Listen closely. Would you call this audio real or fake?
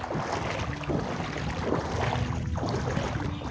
real